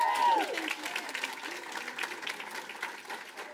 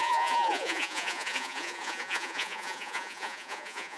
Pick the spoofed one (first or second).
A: second